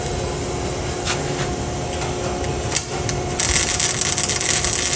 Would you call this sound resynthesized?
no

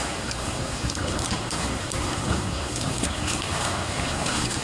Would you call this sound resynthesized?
yes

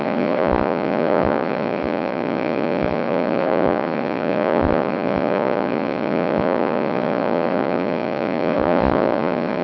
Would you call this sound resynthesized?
yes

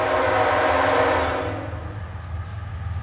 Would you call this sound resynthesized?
no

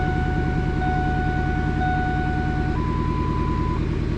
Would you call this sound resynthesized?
no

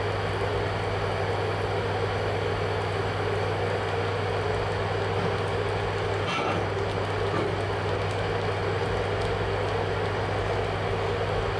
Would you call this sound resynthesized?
no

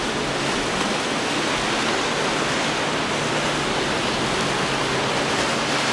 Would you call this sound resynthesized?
no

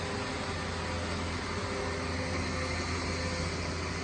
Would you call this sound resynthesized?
no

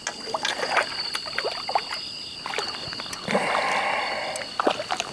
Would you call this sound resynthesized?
no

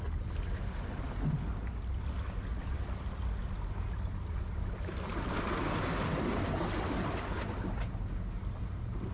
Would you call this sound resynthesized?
no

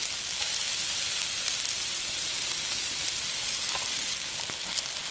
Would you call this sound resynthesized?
no